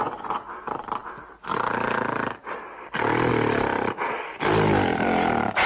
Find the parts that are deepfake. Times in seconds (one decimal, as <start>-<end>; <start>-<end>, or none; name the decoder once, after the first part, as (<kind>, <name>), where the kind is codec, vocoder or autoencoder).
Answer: none